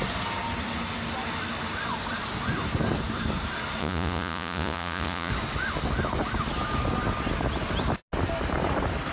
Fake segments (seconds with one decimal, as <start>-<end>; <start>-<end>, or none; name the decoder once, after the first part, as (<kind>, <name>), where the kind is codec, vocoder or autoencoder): 3.8-5.3 (vocoder, Vocos)